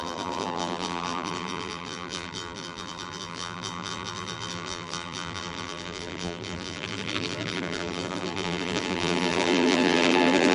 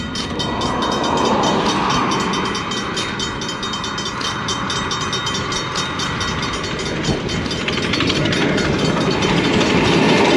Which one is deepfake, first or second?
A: first